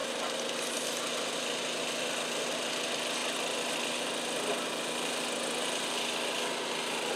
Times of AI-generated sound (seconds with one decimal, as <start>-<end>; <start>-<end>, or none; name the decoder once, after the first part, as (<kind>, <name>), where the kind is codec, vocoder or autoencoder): none